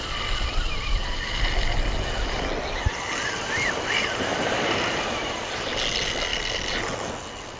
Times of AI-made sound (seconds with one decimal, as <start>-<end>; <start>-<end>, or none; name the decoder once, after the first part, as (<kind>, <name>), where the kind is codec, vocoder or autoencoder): none